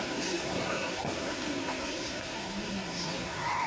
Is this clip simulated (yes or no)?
yes